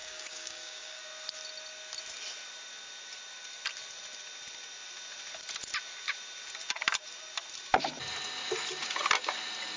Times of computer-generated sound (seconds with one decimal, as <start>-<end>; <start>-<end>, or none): 0.0-1.0